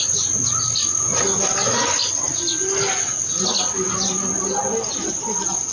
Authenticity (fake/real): real